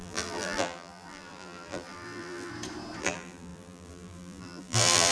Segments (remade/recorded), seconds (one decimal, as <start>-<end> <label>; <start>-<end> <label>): 0.0-2.5 remade; 2.5-3.0 recorded; 3.0-5.1 remade